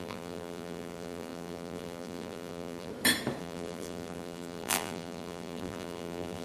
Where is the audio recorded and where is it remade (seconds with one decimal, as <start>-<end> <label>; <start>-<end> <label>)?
0.0-2.9 remade; 2.9-3.4 recorded; 3.4-6.4 remade